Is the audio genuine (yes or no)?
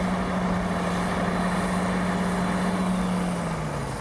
yes